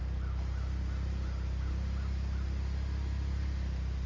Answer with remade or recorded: recorded